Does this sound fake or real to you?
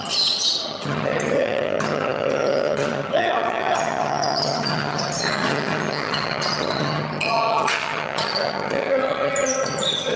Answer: fake